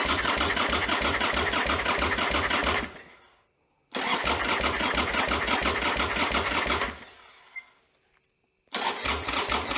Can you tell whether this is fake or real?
real